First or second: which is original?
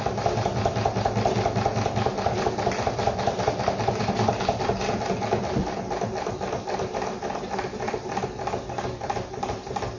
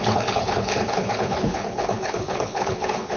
first